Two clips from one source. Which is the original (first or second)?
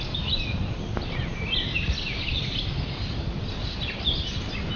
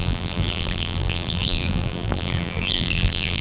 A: first